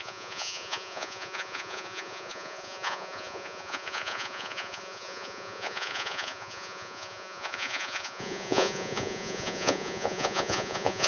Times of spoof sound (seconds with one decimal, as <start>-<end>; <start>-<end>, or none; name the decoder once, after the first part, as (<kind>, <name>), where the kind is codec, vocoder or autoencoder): 0.0-11.1 (vocoder, Vocos)